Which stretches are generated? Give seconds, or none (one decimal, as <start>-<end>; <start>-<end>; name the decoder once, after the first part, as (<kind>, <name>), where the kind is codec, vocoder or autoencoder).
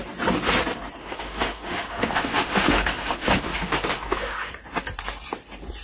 1.0-4.5 (autoencoder, DAC-VAE)